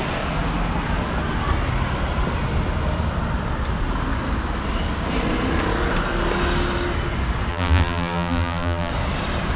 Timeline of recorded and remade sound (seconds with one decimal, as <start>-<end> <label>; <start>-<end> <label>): 0.0-7.5 recorded; 7.5-8.9 remade; 8.9-9.6 recorded